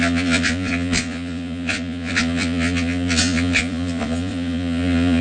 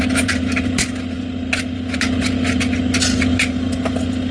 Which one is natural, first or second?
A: second